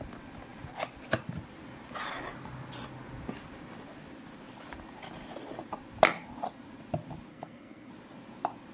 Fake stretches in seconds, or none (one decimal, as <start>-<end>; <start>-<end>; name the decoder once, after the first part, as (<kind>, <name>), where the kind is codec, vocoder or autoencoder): 7.3-7.9 (codec, SNAC)